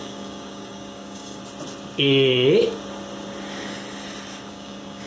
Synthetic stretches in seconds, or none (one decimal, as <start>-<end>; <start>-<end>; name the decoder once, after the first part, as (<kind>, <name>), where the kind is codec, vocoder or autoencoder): 0.0-1.4 (codec, DAC); 4.5-5.1